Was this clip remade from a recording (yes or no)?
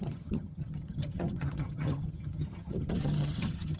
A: yes